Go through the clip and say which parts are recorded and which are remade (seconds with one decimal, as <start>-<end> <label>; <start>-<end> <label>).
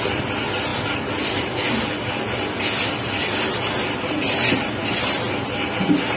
0.0-6.2 recorded